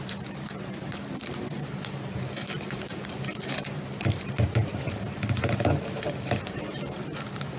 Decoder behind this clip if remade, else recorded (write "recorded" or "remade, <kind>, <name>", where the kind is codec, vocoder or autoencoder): remade, vocoder, BigVGAN v2